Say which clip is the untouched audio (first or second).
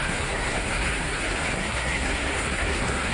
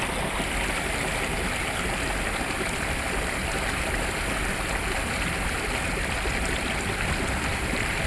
second